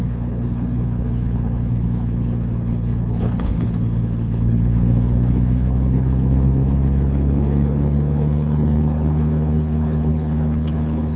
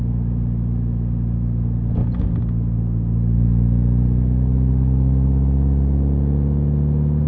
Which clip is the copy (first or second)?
first